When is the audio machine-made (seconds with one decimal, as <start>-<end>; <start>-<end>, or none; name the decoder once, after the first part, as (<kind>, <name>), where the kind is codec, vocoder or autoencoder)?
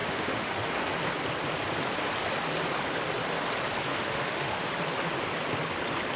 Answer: 0.0-0.7 (autoencoder, DAC-VAE); 3.9-4.7